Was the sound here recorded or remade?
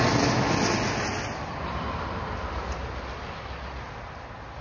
recorded